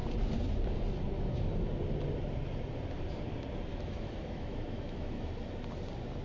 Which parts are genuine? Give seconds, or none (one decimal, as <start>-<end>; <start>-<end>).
0.0-3.7; 5.3-6.2